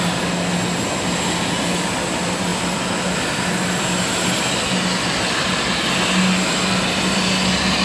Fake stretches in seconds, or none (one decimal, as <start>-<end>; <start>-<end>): none